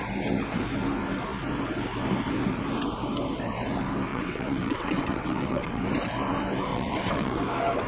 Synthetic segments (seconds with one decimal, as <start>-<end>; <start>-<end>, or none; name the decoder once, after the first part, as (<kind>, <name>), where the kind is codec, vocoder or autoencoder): 4.1-5.8 (vocoder, WaveNeXt); 6.7-7.4